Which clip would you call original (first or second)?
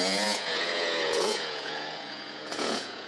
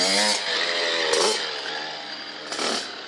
second